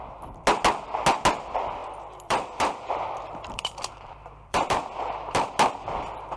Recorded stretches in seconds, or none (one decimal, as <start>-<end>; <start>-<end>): 0.0-1.8; 5.5-6.4